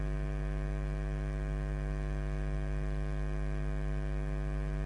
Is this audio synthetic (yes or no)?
no